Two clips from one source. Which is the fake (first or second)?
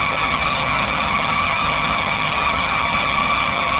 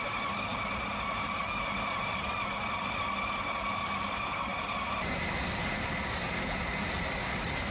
first